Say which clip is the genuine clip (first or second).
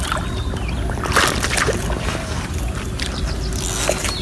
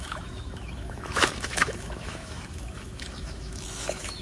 first